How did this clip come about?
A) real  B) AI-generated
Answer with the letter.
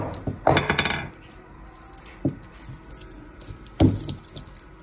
A